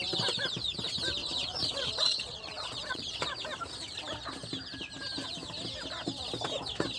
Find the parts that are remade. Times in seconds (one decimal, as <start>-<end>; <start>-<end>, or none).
1.2-3.2